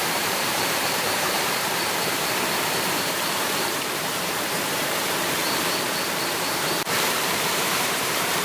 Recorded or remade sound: remade